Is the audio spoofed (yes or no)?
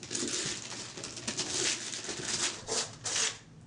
no